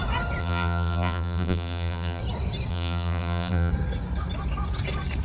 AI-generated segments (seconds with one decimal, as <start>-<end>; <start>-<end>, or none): 0.4-2.2; 2.7-3.7